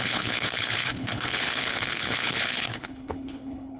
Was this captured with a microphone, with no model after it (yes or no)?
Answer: no